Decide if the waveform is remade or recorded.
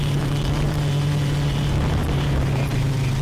remade